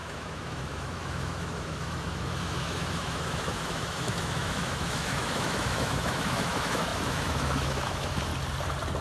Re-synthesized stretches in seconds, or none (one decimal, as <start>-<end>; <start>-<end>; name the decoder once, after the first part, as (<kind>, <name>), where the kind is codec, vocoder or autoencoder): 0.0-8.3 (autoencoder, DAC-VAE)